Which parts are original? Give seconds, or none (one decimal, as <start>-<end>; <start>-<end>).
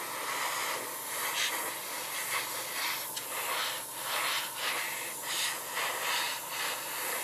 1.6-4.6; 5.2-6.4